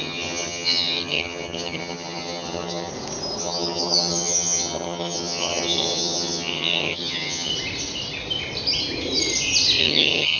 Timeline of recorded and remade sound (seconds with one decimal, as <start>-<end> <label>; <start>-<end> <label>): 0.0-2.9 remade; 2.9-3.4 recorded; 3.4-7.5 remade; 7.5-9.8 recorded; 9.8-10.4 remade